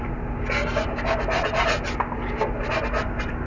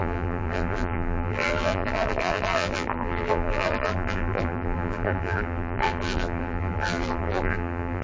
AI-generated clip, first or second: second